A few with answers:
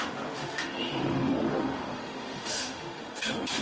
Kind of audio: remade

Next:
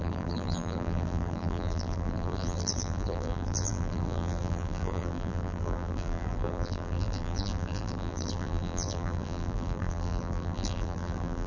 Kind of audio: remade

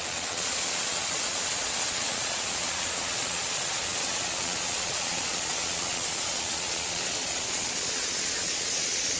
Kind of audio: remade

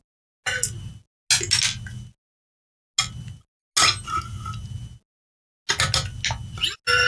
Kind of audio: recorded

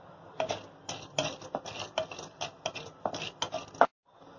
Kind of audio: recorded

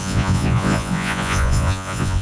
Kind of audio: remade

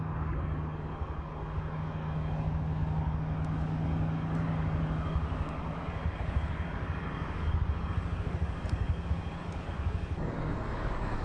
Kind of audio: remade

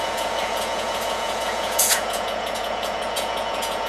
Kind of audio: remade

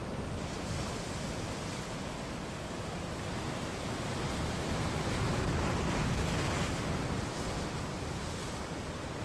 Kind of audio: recorded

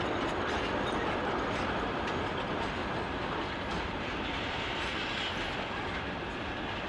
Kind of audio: recorded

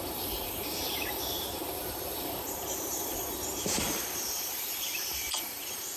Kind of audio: remade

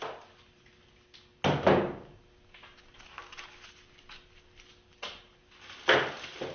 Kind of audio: recorded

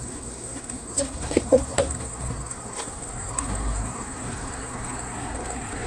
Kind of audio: remade